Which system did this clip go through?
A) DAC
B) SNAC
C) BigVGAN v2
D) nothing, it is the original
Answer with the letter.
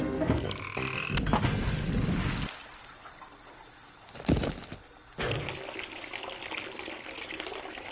D